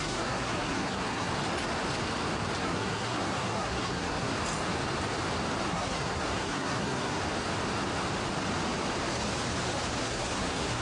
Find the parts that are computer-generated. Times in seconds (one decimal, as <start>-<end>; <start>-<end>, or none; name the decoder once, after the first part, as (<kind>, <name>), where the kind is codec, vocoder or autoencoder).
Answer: 0.0-1.3 (codec, SNAC); 2.6-4.3; 5.7-7.2; 10.0-10.8